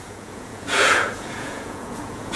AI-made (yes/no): yes